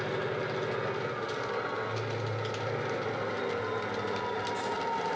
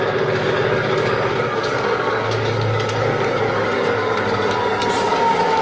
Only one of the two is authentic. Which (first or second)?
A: first